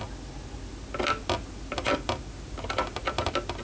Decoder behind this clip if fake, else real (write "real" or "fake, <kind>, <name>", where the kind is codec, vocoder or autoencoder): real